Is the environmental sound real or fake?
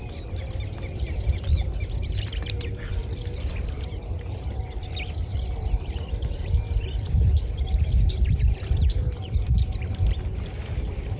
fake